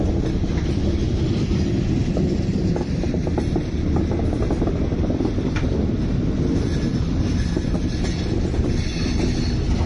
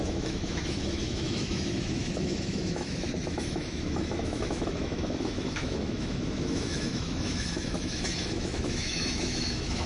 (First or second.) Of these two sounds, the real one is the first